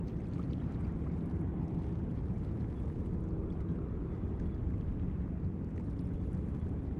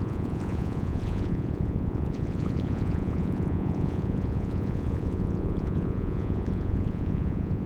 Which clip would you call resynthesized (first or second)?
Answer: second